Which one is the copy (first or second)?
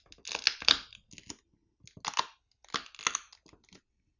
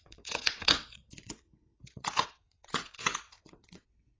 second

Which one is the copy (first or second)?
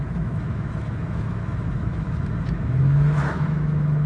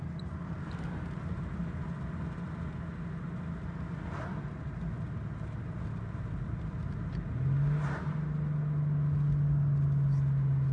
first